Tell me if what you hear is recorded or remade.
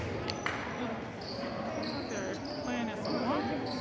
recorded